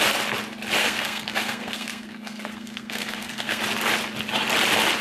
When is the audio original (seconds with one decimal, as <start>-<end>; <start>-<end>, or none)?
0.0-0.8; 3.6-5.0